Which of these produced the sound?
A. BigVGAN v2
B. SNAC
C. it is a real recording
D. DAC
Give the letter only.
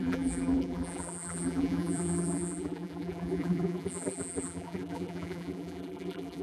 A